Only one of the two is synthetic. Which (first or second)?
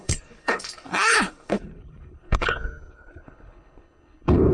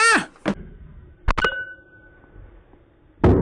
first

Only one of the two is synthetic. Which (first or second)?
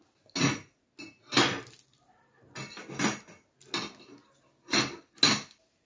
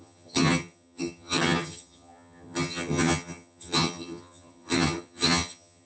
second